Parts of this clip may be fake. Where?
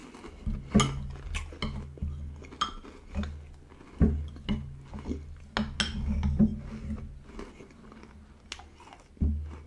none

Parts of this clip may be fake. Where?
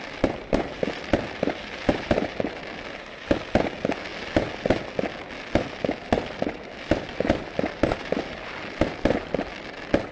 none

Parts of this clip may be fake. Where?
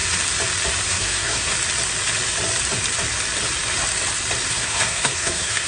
0.9-1.5 (codec, SNAC); 4.5-5.7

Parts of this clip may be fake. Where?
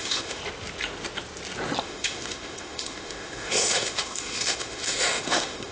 0.0-0.4 (autoencoder, DAC-VAE); 1.8-5.7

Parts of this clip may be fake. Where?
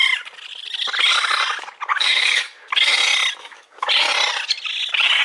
1.9-2.7 (codec, DAC); 3.4-3.9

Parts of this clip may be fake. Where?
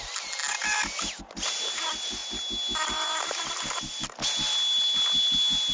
none